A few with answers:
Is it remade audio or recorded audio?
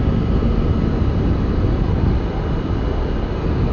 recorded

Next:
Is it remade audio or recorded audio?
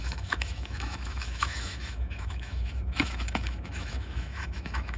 remade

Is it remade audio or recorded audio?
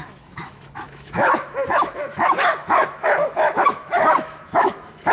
remade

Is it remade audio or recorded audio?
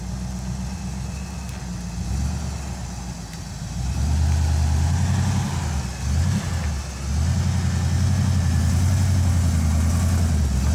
recorded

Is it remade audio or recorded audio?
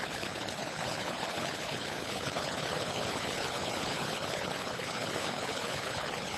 remade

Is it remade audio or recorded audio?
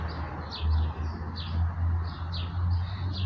recorded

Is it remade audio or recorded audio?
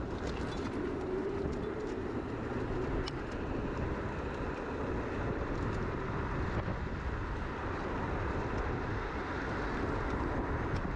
remade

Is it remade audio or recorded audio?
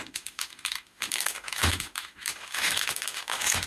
remade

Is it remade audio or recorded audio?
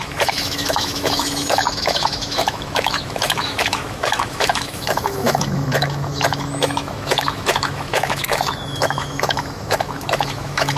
remade